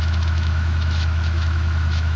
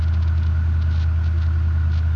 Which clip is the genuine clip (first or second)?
second